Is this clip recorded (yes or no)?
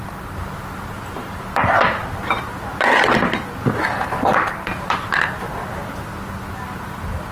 yes